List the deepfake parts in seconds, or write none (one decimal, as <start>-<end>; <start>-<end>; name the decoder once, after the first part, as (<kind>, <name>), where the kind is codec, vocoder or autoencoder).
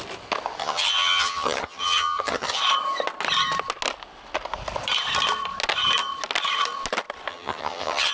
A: 0.6-2.6 (vocoder, HiFi-GAN); 7.3-8.1